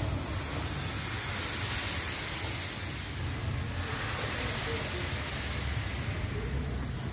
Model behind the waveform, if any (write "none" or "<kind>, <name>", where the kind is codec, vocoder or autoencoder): none